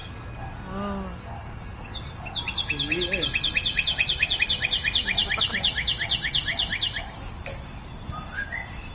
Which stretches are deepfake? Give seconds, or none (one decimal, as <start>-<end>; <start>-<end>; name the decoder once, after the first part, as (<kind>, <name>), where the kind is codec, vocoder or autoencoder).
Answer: 6.5-7.4 (vocoder, BigVGAN v2)